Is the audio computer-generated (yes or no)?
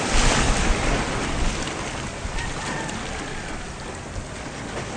no